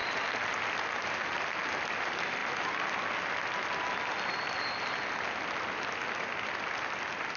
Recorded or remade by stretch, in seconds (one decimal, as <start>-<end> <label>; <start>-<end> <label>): 0.0-7.4 recorded